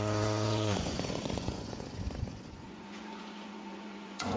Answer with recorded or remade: remade